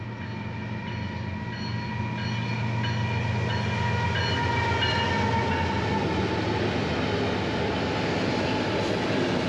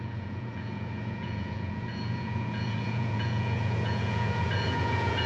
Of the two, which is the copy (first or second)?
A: second